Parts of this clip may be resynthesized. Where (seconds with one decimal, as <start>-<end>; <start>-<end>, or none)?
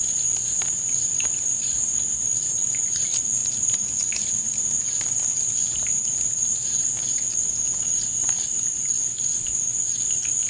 none